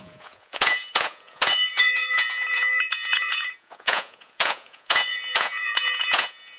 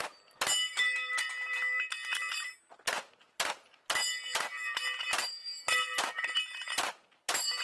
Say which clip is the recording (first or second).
second